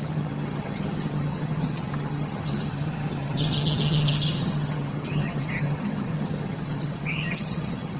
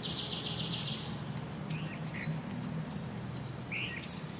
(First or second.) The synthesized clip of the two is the first